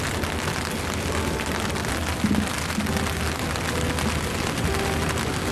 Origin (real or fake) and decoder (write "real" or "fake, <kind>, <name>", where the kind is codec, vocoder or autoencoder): real